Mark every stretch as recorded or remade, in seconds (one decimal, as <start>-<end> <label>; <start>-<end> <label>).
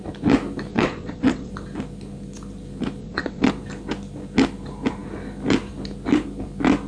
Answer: 0.0-0.7 recorded; 0.7-1.5 remade; 1.5-3.0 recorded; 3.0-3.5 remade; 3.5-6.9 recorded